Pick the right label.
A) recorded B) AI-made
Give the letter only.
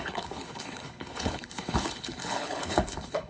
B